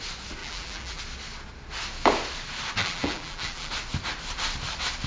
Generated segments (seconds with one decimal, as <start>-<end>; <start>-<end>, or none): 0.4-1.0; 2.8-3.7